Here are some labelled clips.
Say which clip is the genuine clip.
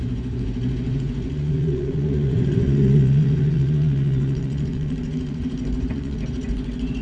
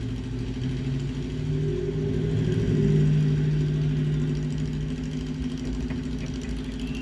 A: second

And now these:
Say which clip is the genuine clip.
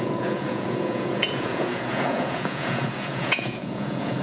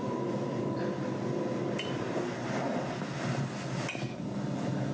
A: second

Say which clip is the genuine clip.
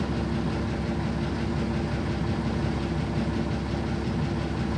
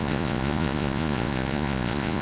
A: first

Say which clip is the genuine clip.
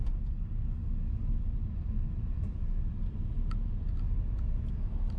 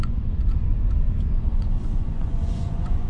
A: first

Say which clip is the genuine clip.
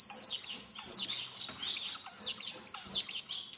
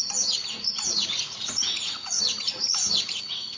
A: first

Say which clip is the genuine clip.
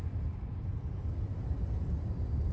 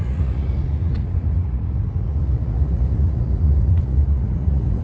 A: first